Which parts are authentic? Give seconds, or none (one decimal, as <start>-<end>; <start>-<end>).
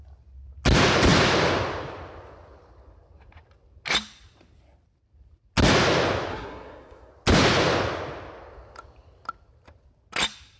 0.0-6.3; 7.1-10.6